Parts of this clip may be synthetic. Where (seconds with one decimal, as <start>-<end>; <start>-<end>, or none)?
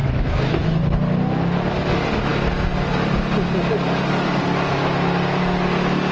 0.0-0.8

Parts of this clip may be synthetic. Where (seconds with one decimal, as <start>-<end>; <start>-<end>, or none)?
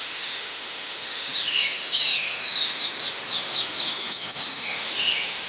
0.0-5.5